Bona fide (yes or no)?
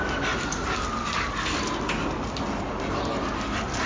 yes